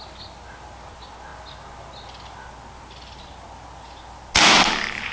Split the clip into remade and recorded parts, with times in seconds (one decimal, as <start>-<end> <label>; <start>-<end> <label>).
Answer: 0.0-5.1 recorded